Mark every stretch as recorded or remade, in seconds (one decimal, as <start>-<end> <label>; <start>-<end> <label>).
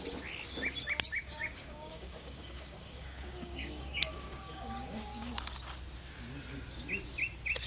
0.0-1.2 recorded; 1.2-5.3 remade; 5.3-7.7 recorded